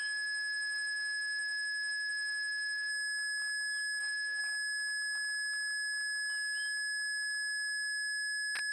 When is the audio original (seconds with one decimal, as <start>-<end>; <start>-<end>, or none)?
2.9-4.0; 4.4-8.7